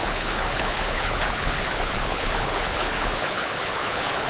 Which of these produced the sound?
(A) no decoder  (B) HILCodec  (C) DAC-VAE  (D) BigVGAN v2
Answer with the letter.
B